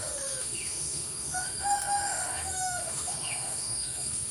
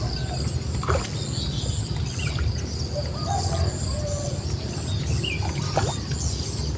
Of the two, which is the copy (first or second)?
first